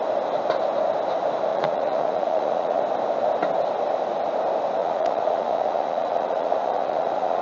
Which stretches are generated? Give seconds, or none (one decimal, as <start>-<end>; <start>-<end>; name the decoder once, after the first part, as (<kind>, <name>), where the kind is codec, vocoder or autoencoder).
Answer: 1.5-2.8 (vocoder, Vocos); 4.8-7.4